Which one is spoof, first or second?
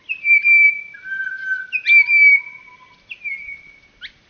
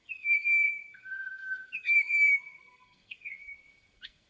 second